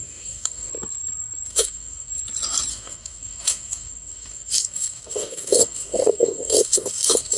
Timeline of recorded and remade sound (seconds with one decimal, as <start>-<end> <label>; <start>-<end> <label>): 0.0-0.7 remade; 0.7-1.5 recorded; 1.5-2.1 remade; 2.1-2.7 recorded; 2.7-7.4 remade